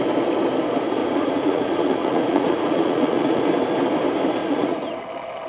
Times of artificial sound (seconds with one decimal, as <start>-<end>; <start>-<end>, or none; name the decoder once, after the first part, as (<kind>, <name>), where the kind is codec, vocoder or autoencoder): 1.0-3.4 (vocoder, Vocos); 4.4-5.0